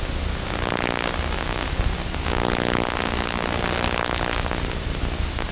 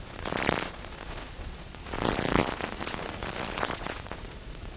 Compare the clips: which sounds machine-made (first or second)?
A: second